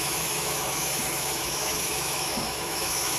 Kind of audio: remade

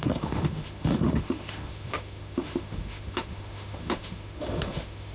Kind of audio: remade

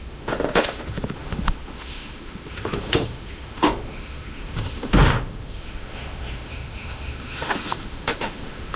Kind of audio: remade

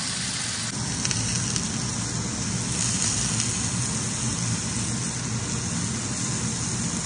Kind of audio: recorded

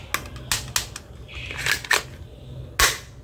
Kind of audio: recorded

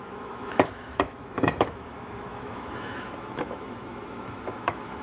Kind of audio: remade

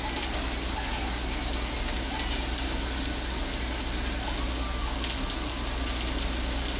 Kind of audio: recorded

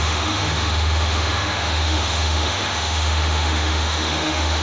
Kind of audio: remade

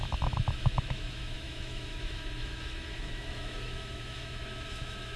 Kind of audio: remade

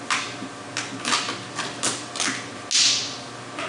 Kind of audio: recorded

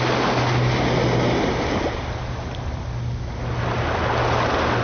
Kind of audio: recorded